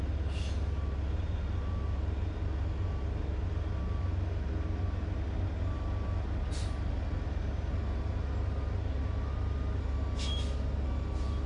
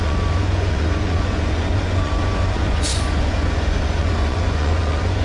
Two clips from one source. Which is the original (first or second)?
first